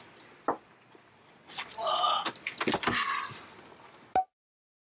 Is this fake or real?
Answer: real